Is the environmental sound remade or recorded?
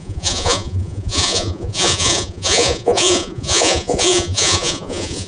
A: remade